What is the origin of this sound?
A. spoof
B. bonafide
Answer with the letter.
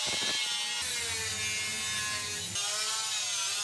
B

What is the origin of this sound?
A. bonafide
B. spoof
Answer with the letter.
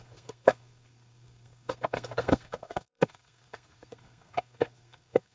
B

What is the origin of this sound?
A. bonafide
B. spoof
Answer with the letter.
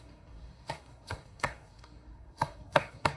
B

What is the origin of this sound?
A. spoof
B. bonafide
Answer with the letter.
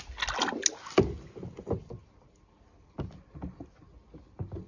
B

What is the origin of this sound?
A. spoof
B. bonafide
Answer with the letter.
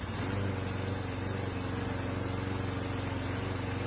B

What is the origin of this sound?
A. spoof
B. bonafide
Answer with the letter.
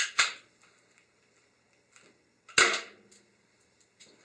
B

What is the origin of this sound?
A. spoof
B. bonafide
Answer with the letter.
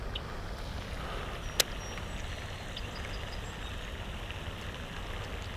B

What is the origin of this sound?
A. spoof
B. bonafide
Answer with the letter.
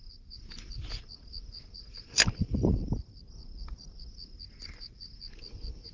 B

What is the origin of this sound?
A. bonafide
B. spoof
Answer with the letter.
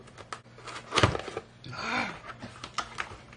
A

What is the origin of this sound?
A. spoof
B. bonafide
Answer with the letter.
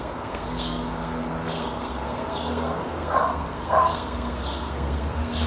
A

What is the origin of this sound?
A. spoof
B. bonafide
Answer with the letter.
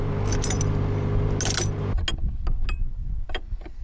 B